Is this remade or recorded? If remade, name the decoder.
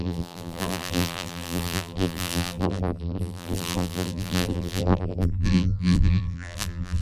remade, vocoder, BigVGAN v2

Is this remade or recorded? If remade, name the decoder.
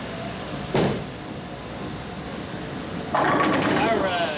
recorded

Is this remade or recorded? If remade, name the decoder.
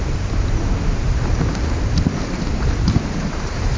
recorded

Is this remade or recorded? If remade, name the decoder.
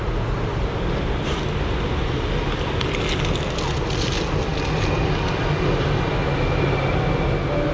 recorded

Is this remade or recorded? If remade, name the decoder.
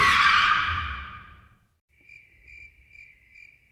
remade, vocoder, BigVGAN v2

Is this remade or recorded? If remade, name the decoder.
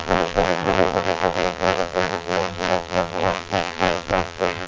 remade, vocoder, BigVGAN v2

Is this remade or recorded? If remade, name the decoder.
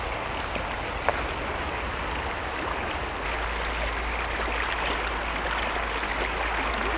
recorded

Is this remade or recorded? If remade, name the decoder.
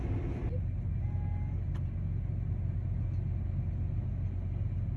recorded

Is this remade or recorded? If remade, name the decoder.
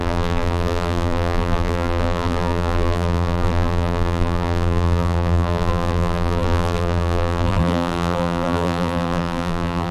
remade, vocoder, BigVGAN v2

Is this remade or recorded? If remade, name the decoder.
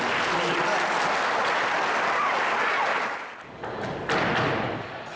recorded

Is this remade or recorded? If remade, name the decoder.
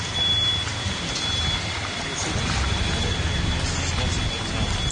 recorded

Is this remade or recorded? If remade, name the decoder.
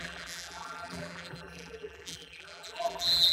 remade, vocoder, BigVGAN v2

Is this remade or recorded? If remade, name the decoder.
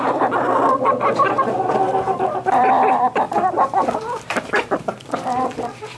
remade, vocoder, BigVGAN v2